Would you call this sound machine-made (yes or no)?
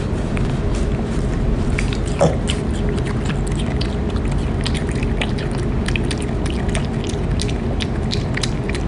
no